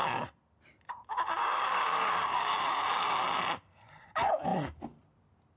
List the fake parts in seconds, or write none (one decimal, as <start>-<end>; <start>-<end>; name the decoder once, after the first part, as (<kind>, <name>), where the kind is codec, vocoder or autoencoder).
1.4-2.8 (codec, DAC)